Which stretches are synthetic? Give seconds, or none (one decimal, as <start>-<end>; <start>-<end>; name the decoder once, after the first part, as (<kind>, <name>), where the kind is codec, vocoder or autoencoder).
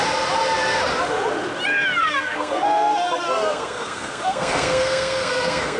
2.0-5.8 (codec, SNAC)